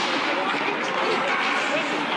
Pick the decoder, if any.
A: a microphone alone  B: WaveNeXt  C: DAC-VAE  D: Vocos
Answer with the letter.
A